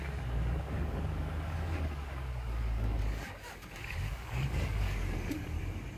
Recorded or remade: remade